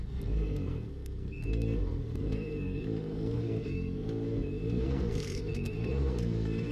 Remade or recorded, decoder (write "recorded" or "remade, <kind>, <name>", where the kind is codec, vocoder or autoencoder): remade, codec, SNAC